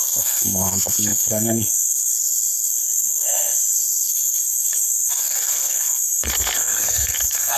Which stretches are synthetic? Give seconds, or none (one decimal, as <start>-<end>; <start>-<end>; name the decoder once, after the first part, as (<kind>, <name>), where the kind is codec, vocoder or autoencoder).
0.0-7.6 (codec, SNAC)